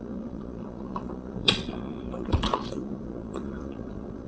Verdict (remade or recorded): remade